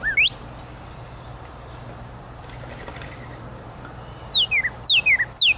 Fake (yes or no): no